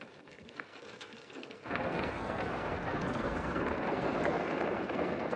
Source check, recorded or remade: remade